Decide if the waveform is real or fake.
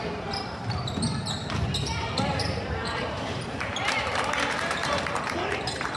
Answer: fake